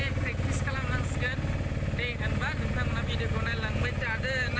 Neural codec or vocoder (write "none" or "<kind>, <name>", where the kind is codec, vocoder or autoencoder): none